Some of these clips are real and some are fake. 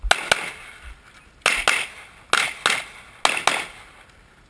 real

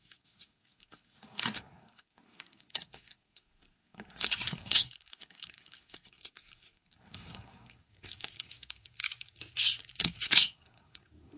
fake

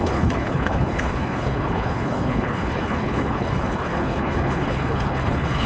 fake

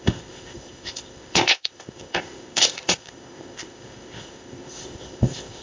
fake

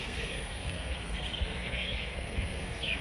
fake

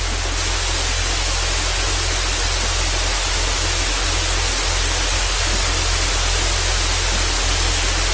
real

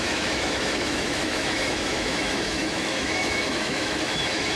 fake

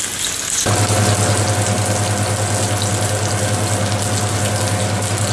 real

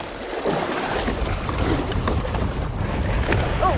real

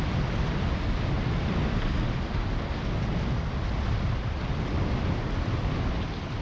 real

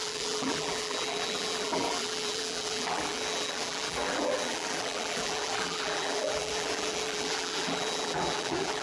fake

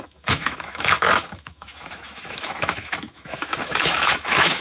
fake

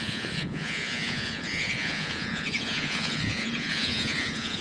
fake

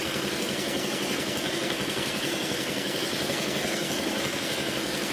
fake